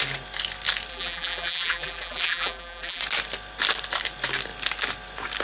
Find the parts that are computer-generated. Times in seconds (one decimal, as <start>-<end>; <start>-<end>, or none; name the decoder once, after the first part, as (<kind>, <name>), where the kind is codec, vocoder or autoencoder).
0.9-3.0 (vocoder, BigVGAN v2)

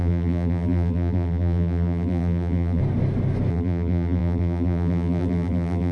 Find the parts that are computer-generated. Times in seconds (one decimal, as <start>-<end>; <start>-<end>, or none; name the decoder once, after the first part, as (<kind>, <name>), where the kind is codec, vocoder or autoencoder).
0.0-2.8 (vocoder, BigVGAN v2); 3.5-5.9